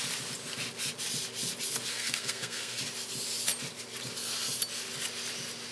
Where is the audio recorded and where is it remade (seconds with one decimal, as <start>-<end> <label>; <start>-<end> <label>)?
0.0-1.9 recorded; 1.9-2.8 remade; 2.8-5.7 recorded